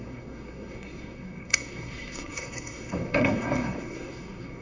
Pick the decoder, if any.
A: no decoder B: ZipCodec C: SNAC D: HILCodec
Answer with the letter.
C